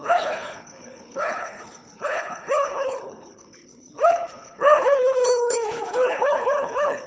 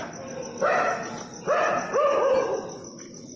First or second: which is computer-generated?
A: first